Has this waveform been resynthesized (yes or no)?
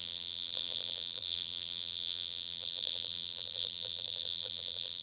yes